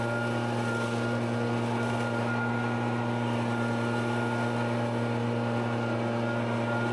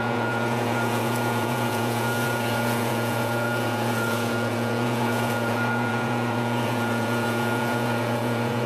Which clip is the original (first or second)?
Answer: first